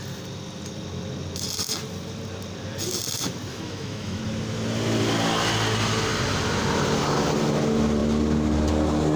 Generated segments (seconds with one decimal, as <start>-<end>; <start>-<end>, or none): 3.5-4.2